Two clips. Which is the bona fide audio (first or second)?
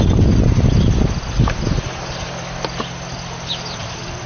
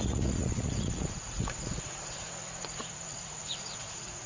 first